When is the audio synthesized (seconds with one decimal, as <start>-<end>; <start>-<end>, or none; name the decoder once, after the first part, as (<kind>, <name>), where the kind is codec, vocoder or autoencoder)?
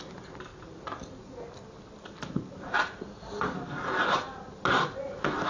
none